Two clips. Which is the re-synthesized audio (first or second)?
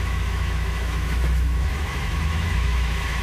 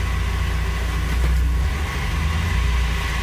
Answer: first